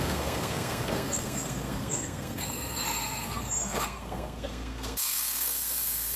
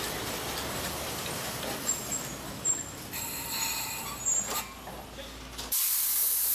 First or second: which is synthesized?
first